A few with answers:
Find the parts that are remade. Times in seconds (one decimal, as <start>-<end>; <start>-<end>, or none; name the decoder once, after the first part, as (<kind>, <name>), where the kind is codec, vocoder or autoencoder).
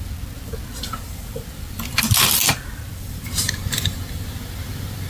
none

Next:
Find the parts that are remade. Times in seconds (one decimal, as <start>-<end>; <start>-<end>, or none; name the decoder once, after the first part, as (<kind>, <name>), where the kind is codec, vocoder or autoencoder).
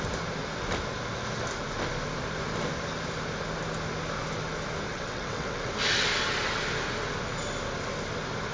4.9-5.7 (vocoder, WaveNeXt)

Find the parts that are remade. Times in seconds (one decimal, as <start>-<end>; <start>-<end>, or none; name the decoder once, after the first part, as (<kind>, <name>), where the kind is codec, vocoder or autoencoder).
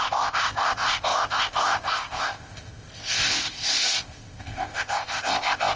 0.0-5.8 (codec, ZipCodec)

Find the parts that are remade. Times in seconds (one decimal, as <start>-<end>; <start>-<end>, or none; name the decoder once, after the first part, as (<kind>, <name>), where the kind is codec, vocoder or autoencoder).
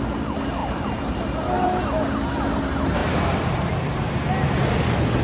0.6-1.2 (vocoder, BigVGAN v2); 3.0-4.3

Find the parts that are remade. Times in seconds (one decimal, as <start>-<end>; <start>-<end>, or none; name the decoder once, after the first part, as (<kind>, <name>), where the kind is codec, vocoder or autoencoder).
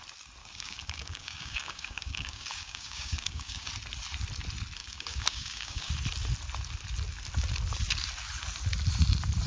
0.4-3.7 (codec, DAC); 4.8-5.9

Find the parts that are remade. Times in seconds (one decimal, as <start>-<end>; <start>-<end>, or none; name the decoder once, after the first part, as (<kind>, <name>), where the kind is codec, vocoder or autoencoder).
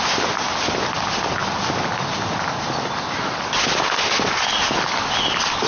none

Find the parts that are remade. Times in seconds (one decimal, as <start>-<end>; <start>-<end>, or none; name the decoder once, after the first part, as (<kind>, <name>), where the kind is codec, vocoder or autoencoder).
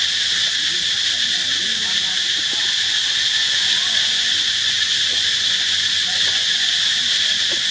3.4-6.7 (vocoder, Vocos)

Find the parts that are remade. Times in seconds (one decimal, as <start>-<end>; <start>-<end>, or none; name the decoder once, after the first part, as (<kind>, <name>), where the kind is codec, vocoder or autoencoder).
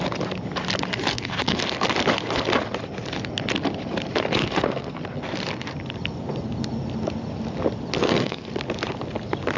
1.1-1.6 (codec, SNAC); 4.4-5.0; 8.0-8.5